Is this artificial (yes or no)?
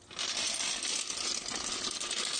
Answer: no